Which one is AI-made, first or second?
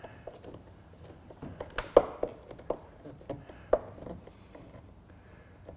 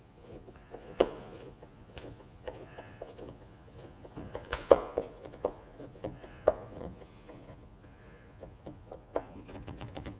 second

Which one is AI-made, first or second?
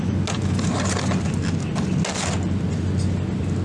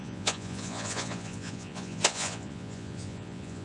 second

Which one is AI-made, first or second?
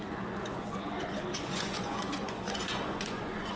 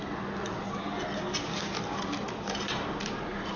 first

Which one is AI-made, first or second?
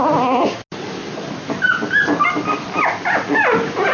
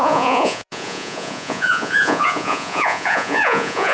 second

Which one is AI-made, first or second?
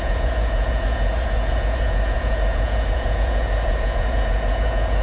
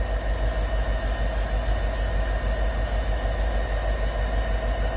first